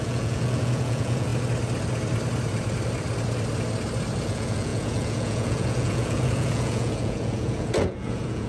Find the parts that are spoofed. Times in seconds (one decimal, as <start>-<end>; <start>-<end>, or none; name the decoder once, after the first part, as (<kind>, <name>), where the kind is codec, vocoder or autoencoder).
0.0-1.3 (vocoder, Vocos); 4.2-8.5

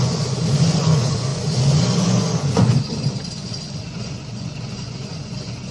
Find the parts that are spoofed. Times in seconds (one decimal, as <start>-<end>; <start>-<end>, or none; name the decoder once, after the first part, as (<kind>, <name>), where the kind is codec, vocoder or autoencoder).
0.0-5.7 (vocoder, Vocos)

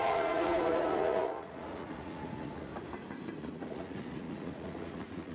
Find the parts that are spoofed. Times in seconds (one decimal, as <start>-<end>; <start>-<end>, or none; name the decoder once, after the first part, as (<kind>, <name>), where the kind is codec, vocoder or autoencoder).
0.0-2.7 (vocoder, Vocos); 3.4-5.3

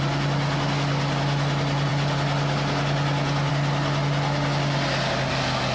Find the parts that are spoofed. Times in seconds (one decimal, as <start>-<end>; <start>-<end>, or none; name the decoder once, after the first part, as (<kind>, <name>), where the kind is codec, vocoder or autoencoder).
none

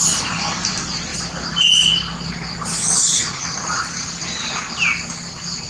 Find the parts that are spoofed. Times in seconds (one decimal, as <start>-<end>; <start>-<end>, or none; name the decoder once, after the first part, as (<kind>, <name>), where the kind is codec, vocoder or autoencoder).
none

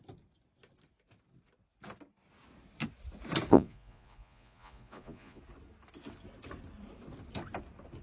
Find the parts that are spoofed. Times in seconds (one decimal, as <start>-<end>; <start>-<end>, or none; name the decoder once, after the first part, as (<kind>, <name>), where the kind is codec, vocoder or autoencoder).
3.5-5.4 (vocoder, Vocos)

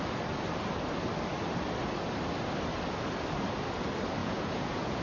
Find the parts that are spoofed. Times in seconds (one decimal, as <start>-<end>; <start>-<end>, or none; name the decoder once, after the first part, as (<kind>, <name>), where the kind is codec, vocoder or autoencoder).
4.2-5.0 (vocoder, Vocos)

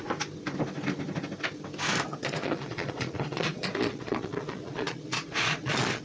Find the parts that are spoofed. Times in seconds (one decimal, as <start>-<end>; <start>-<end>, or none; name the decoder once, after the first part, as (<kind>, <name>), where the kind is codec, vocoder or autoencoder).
2.1-6.0 (vocoder, Vocos)